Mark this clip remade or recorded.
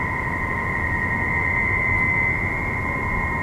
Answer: recorded